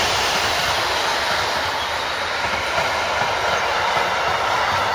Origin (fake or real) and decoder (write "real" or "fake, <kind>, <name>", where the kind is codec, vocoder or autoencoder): fake, vocoder, BigVGAN v2